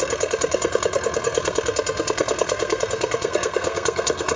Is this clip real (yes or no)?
no